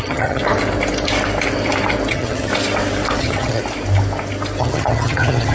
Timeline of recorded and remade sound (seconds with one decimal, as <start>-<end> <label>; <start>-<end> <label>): 0.0-0.4 remade; 0.4-2.1 recorded; 2.1-2.5 remade; 2.5-3.2 recorded; 3.2-3.6 remade; 3.6-4.6 recorded; 4.6-5.5 remade